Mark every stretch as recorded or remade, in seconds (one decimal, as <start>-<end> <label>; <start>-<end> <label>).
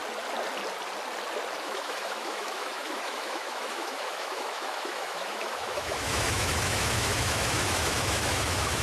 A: 0.0-1.6 recorded; 1.6-8.8 remade